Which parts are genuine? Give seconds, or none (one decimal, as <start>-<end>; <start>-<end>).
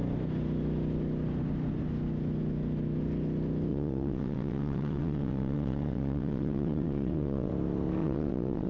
0.0-3.7; 7.5-8.0